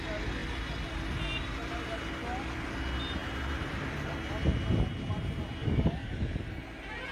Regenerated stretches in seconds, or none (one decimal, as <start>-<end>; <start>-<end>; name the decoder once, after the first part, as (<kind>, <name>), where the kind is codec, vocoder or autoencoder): 5.6-6.4 (codec, DAC)